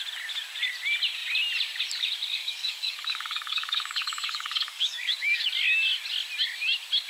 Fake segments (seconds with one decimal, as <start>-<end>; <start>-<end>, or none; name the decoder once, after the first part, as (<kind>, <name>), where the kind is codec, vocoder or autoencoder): 2.4-5.5 (codec, DAC)